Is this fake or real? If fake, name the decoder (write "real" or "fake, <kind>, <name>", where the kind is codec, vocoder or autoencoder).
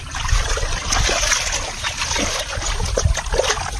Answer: real